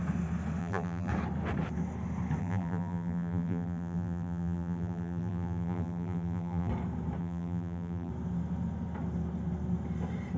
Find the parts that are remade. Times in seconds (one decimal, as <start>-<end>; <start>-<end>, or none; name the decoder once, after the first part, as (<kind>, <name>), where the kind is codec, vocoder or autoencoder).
0.6-1.1 (vocoder, BigVGAN v2); 2.4-6.7; 7.2-8.1